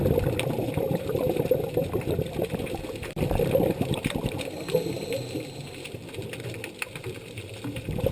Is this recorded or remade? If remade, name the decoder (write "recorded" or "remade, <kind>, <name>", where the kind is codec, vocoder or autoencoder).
recorded